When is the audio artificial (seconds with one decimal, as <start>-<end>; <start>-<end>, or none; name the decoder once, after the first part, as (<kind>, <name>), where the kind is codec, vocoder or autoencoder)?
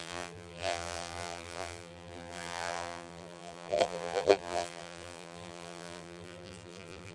0.0-7.1 (vocoder, BigVGAN v2)